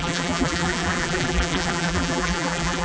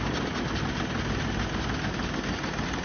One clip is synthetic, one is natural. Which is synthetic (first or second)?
first